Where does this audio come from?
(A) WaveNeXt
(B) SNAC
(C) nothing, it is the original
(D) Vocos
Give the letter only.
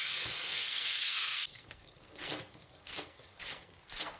B